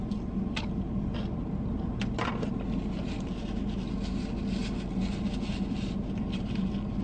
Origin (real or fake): real